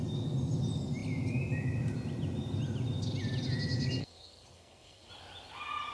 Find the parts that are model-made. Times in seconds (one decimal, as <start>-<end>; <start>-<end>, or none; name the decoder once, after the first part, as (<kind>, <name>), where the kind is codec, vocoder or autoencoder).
4.0-5.1 (codec, SNAC)